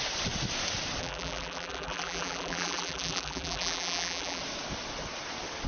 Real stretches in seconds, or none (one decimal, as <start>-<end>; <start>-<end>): 0.0-1.0; 4.4-5.7